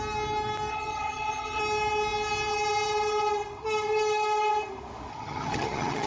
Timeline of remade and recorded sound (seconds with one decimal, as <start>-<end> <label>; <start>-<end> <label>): 0.0-0.7 recorded; 0.7-1.6 remade; 1.6-5.1 recorded; 5.1-6.1 remade